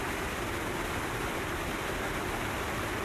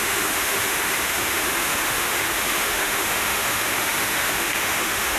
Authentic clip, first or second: first